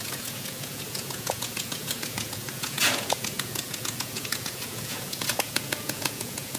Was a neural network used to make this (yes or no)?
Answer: yes